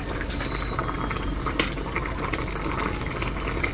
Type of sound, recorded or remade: recorded